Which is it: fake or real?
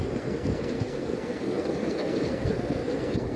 fake